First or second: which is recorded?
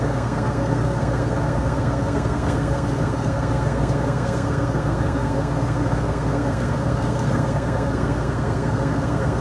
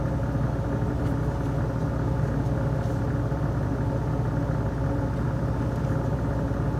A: second